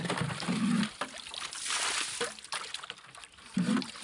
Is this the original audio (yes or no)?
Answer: yes